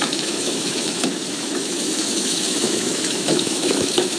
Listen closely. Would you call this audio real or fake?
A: fake